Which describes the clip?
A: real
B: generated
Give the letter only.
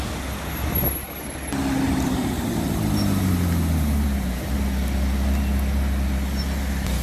A